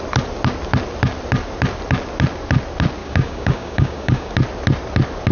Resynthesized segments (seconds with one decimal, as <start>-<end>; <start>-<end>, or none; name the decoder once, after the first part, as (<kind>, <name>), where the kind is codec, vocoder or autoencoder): 3.0-4.3 (codec, DAC)